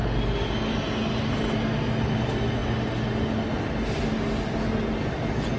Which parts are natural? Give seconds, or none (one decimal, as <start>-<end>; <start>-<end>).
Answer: 0.0-5.6